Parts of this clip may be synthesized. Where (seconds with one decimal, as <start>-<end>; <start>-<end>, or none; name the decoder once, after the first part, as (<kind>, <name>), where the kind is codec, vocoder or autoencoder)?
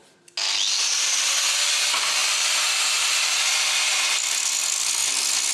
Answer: none